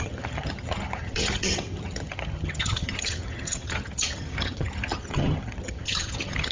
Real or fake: fake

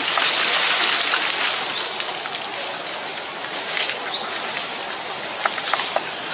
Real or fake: real